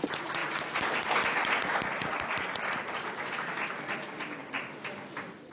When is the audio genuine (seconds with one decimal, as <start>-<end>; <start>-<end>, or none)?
0.0-0.4; 1.5-5.5